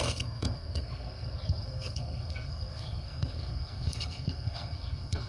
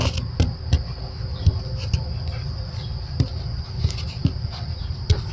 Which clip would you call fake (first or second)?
first